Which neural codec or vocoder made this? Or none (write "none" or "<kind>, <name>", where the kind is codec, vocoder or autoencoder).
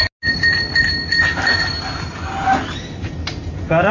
none